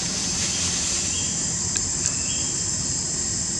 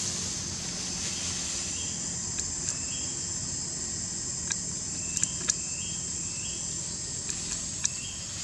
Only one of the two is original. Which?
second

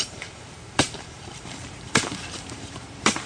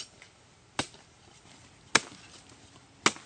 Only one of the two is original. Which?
second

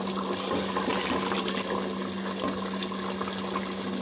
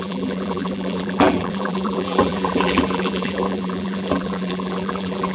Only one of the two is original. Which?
first